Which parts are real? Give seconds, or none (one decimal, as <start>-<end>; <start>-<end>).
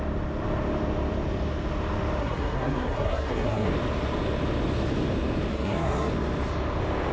0.0-2.2; 3.7-5.5; 6.1-7.1